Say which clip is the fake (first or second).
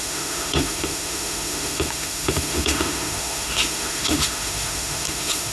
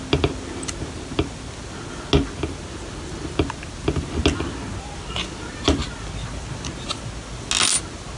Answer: first